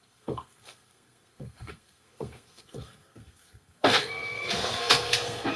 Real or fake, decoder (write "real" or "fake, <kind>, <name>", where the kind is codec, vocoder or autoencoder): fake, codec, SNAC